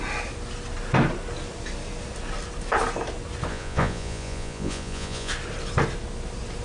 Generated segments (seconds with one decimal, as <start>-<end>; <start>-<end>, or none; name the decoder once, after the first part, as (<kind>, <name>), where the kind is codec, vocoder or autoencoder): 3.5-5.3 (vocoder, Vocos)